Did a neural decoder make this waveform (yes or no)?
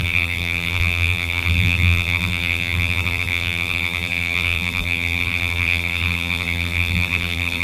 yes